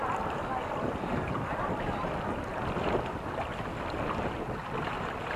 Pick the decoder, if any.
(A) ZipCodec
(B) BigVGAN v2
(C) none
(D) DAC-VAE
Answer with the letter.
C